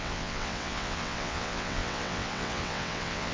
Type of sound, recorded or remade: remade